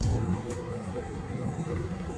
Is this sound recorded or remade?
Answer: remade